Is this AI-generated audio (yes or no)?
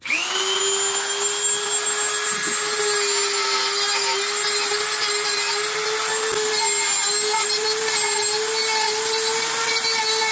no